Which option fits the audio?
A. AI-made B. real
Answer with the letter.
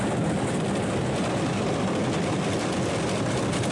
B